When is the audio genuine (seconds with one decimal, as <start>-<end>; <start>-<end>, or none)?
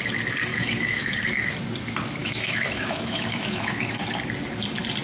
0.0-0.5; 1.1-2.2; 4.0-5.0